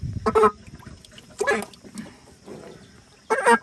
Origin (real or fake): real